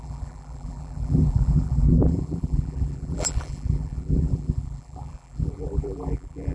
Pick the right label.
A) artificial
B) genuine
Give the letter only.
A